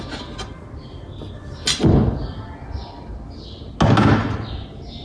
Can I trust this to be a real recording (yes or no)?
yes